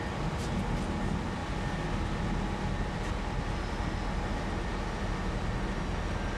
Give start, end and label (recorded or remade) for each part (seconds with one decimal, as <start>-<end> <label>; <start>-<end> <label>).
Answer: 0.0-6.4 recorded